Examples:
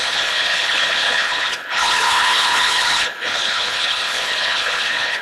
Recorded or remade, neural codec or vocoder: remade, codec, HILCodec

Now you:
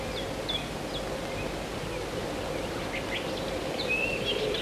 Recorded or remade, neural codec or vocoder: recorded